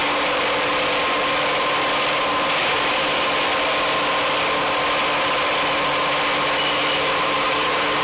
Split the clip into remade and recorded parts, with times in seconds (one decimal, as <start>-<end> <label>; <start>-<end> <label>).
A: 0.0-2.6 recorded; 2.6-3.5 remade; 3.5-7.1 recorded; 7.1-8.0 remade